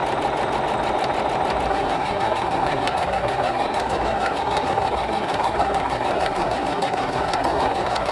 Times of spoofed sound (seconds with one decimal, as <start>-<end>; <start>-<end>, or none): 1.7-8.1